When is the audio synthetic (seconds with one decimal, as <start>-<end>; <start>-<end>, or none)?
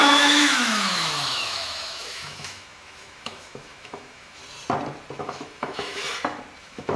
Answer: 0.0-4.4; 5.2-6.0; 6.6-7.0